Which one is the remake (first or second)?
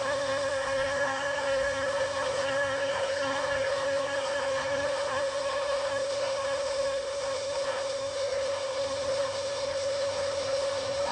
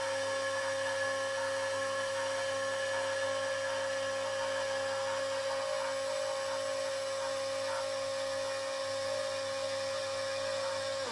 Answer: first